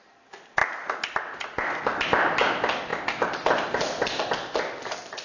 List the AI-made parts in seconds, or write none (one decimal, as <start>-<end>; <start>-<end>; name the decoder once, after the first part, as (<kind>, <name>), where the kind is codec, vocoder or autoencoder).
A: none